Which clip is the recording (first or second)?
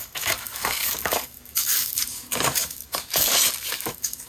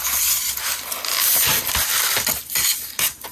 second